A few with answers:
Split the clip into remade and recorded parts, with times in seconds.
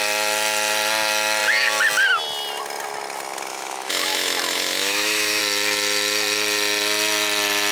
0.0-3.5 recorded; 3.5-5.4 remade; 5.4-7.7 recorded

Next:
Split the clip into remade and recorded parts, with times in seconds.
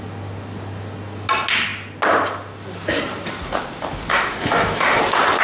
0.0-4.1 recorded; 4.1-5.0 remade; 5.0-5.4 recorded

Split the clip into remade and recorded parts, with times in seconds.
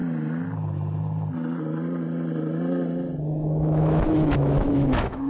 0.0-3.2 recorded; 3.2-5.3 remade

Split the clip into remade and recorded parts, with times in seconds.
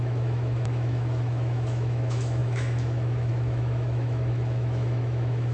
0.0-5.5 remade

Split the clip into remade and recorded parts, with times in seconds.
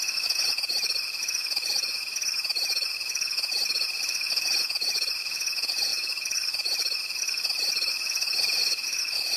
0.0-9.4 remade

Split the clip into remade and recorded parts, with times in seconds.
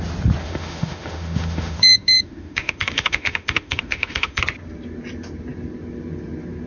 0.0-0.4 recorded; 0.4-4.4 remade; 4.4-6.7 recorded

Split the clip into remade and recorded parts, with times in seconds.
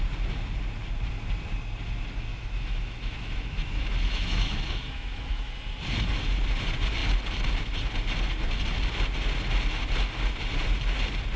0.0-2.3 recorded; 2.3-5.5 remade; 5.5-11.4 recorded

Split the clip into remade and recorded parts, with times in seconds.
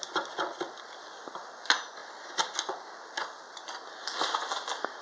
0.0-5.0 recorded